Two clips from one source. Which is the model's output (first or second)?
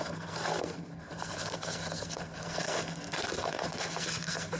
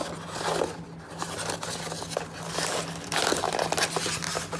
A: first